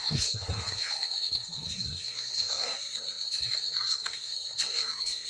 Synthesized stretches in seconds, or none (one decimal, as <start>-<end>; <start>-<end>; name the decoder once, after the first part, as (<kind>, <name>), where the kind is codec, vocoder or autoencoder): 0.0-5.3 (codec, SNAC)